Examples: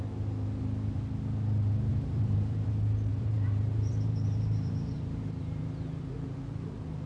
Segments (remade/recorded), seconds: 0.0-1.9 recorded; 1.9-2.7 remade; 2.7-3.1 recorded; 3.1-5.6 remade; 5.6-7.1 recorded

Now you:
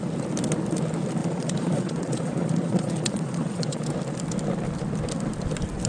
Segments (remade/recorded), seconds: 0.0-1.2 recorded; 1.2-3.8 remade; 3.8-5.9 recorded

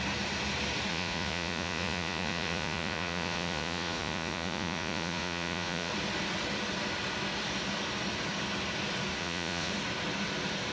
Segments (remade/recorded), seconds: 0.0-0.9 recorded; 0.9-5.9 remade; 5.9-9.2 recorded; 9.2-9.7 remade; 9.7-10.7 recorded

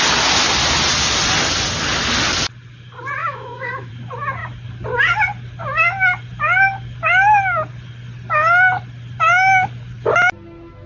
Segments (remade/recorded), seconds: 0.0-3.2 recorded; 3.2-3.9 remade; 3.9-10.9 recorded

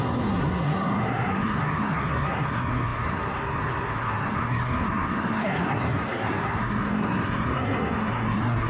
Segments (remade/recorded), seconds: 0.0-8.7 remade

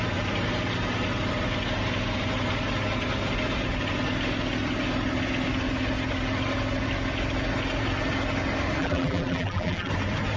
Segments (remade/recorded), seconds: 0.0-8.8 recorded; 8.8-9.9 remade; 9.9-10.4 recorded

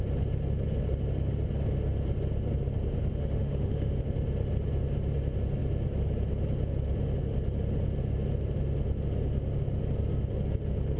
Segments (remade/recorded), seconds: 0.0-3.1 recorded; 3.1-4.0 remade; 4.0-11.0 recorded